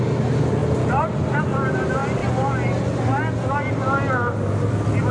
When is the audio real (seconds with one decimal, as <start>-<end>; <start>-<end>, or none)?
0.0-5.1